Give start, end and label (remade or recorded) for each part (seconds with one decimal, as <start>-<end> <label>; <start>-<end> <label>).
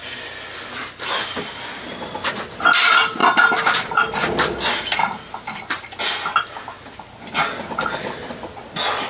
0.0-9.1 recorded